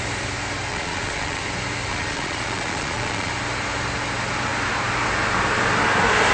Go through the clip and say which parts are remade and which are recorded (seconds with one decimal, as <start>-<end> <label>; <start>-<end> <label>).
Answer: 0.0-0.7 recorded; 0.7-1.4 remade; 1.4-1.9 recorded; 1.9-3.3 remade; 3.3-6.3 recorded